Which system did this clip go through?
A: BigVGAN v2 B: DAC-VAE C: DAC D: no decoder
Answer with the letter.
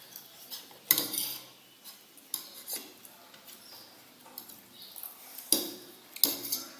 D